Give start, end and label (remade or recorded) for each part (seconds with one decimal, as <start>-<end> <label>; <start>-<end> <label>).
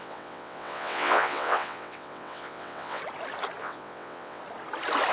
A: 0.0-3.0 remade; 3.0-3.6 recorded; 3.6-4.4 remade; 4.4-5.1 recorded